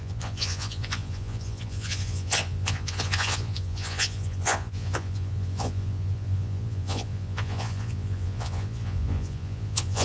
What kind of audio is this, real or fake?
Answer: fake